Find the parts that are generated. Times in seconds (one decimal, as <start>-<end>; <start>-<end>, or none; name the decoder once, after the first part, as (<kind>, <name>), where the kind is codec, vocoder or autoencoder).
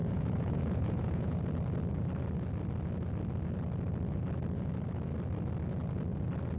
0.0-1.4 (vocoder, Vocos)